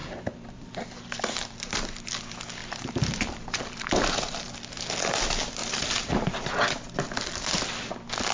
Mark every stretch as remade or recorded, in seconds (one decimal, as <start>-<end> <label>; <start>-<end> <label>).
0.0-1.7 remade; 1.7-2.6 recorded; 2.6-4.5 remade; 4.5-5.6 recorded; 5.6-6.5 remade; 6.5-8.3 recorded

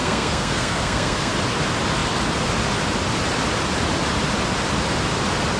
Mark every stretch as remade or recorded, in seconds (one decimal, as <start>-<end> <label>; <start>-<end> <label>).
0.0-1.3 remade; 1.3-5.6 recorded

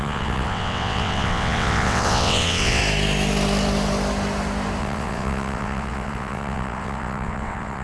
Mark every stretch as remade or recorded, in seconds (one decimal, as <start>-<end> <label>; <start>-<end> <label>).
0.0-2.8 remade; 2.8-4.8 recorded; 4.8-7.8 remade